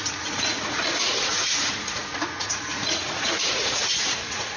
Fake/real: fake